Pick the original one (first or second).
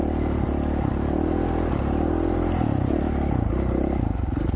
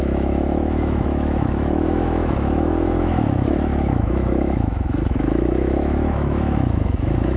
first